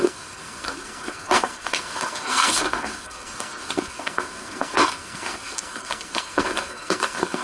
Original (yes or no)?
no